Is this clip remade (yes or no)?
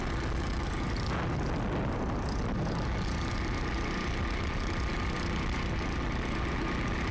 no